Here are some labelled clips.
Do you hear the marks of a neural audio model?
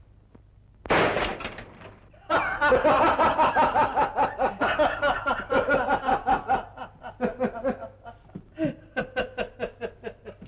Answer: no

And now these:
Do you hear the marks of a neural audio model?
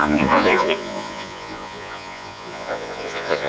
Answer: yes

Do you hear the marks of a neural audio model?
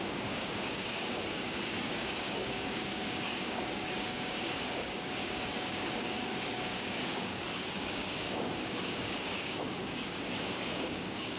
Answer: yes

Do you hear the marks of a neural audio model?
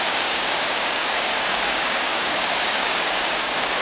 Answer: yes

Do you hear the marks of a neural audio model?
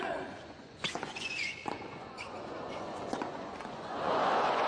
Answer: yes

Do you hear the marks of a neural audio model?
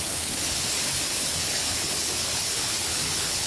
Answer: yes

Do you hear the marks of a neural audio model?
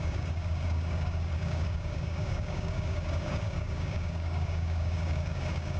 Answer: yes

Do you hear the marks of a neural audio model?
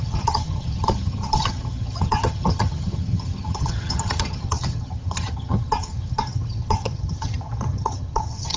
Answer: yes